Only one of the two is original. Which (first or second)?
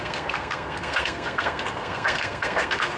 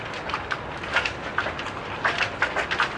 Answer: second